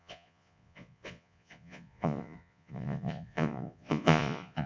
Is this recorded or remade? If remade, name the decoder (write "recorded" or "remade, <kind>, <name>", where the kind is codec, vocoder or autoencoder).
remade, vocoder, Vocos